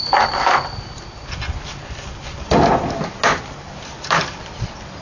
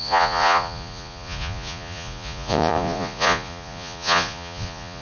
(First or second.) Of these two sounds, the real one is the first